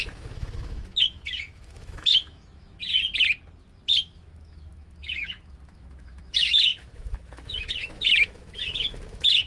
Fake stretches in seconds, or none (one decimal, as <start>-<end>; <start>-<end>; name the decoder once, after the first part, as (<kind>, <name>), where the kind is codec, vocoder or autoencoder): 0.0-2.8 (autoencoder, DAC-VAE); 4.0-9.5

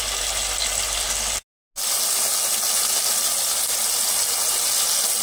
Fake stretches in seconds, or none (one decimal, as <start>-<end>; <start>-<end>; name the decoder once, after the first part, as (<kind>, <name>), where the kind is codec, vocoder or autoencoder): none

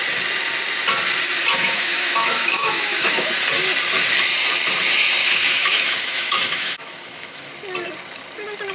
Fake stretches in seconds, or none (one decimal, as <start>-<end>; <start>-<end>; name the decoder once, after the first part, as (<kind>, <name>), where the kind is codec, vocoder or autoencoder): 1.5-3.3 (autoencoder, DAC-VAE); 5.2-7.5

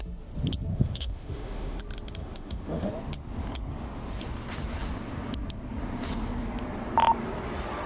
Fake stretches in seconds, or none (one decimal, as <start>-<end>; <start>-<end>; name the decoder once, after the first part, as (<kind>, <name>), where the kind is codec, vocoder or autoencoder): 0.7-1.8 (autoencoder, DAC-VAE); 2.2-2.9

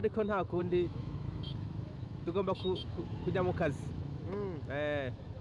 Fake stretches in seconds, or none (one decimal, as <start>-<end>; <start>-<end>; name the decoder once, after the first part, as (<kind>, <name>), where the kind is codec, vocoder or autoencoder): 0.0-3.2 (autoencoder, DAC-VAE); 3.9-5.4